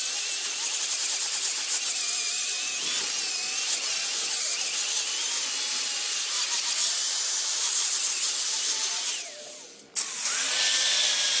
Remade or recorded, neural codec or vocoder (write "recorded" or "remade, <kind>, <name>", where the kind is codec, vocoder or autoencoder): recorded